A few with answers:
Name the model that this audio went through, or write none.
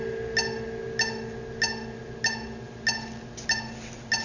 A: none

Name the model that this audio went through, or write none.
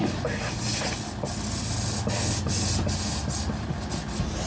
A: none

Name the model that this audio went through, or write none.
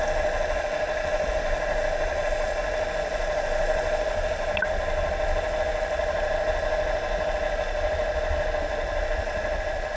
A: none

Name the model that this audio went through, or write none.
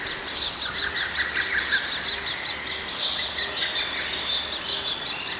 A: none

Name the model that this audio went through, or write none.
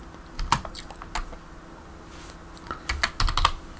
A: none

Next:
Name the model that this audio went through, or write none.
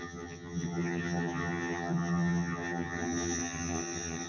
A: vocoder, HiFi-GAN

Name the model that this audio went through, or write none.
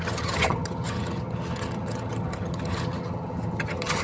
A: vocoder, HiFi-GAN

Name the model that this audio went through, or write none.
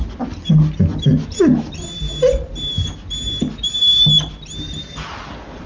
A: none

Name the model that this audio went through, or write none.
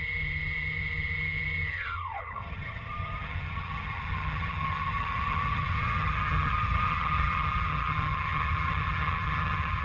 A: vocoder, HiFi-GAN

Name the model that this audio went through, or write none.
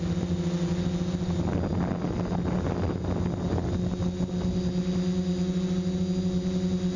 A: none